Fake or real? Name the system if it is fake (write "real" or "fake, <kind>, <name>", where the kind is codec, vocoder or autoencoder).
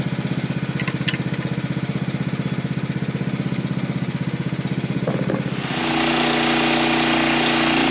real